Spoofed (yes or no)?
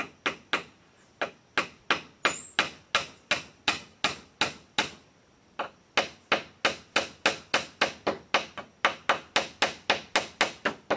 no